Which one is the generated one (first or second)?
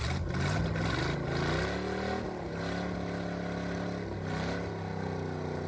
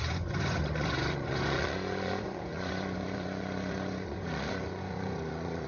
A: second